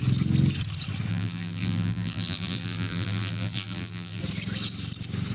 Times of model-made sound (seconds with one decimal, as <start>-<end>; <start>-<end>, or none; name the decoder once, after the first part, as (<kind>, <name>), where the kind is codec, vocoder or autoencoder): 1.1-4.2 (vocoder, BigVGAN v2)